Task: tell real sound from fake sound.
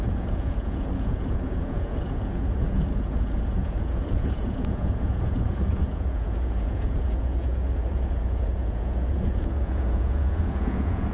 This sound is fake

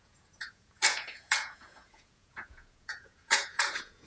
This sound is fake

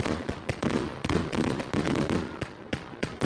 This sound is fake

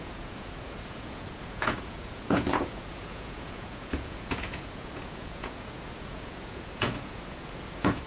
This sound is fake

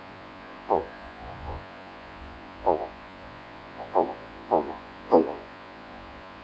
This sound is fake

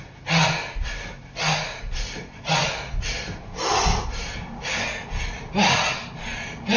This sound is real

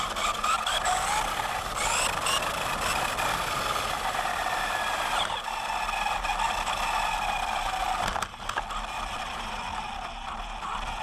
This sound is real